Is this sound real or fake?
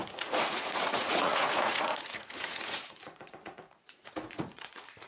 fake